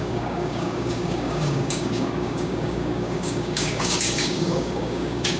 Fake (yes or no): yes